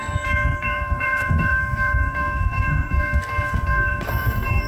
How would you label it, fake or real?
fake